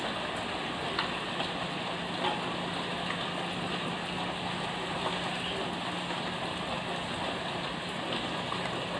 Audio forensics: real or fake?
real